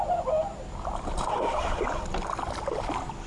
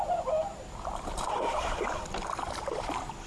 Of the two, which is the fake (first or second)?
second